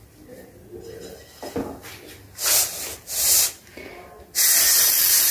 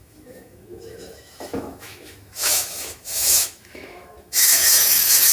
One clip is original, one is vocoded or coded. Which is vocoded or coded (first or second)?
second